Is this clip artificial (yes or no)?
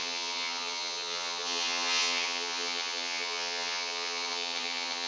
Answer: yes